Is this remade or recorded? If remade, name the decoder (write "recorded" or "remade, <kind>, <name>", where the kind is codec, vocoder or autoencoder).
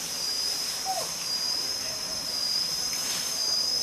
remade, vocoder, BigVGAN v2